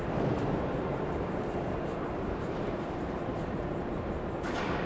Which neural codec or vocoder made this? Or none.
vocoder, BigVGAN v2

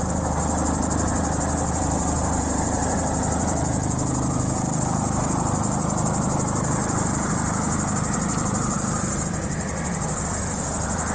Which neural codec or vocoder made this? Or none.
vocoder, BigVGAN v2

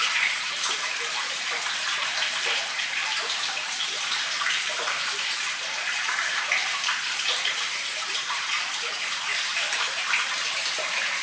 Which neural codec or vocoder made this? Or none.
vocoder, BigVGAN v2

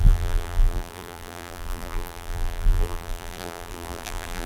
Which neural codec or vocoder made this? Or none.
vocoder, BigVGAN v2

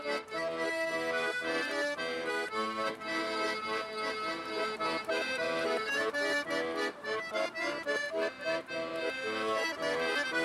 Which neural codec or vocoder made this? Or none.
vocoder, BigVGAN v2